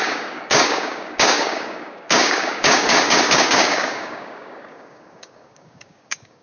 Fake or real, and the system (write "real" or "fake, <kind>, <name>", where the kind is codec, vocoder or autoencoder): fake, codec, DAC